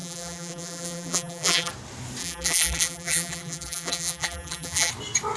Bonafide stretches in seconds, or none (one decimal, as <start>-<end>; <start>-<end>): 1.7-2.2; 4.9-5.4